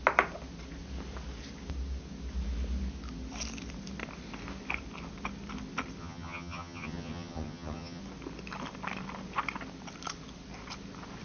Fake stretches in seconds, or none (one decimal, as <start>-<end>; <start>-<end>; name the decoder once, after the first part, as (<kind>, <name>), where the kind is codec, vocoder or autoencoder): 6.0-8.0 (vocoder, HiFi-GAN)